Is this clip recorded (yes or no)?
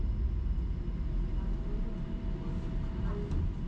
yes